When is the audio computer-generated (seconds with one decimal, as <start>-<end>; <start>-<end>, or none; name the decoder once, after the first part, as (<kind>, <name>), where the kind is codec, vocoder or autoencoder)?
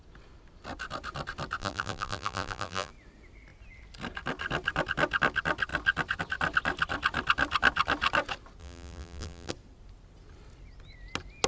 1.6-2.9 (vocoder, BigVGAN v2); 8.6-9.5